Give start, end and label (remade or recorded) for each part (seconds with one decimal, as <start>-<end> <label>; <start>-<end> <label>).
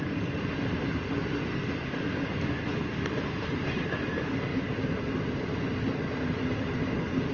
0.0-7.3 recorded